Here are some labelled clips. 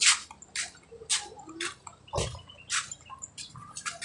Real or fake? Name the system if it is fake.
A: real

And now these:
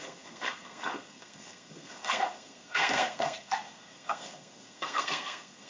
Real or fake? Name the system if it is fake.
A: fake, codec, SNAC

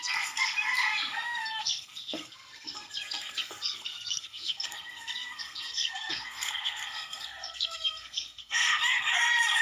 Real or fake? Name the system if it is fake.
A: fake, codec, SNAC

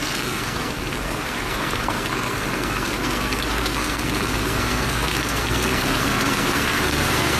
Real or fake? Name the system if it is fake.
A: fake, codec, SNAC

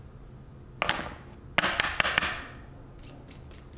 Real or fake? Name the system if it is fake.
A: real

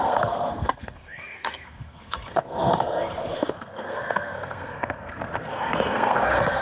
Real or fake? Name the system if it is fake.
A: fake, codec, SNAC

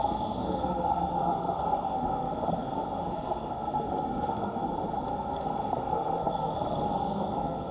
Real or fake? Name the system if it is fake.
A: fake, codec, SNAC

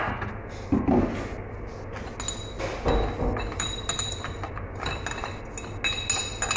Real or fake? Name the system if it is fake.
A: real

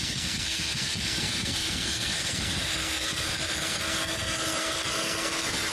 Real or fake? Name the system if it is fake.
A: fake, codec, SNAC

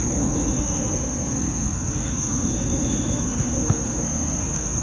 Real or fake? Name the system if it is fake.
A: fake, codec, SNAC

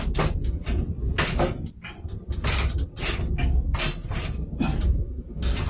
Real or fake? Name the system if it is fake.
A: real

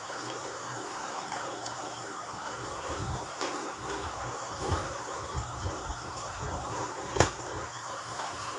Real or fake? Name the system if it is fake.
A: fake, codec, SNAC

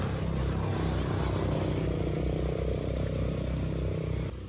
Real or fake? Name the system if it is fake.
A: real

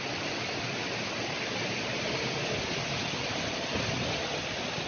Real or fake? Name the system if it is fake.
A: real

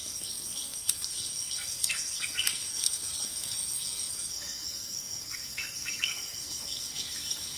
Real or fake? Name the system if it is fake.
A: fake, codec, SNAC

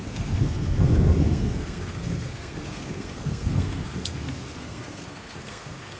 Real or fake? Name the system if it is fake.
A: fake, codec, SNAC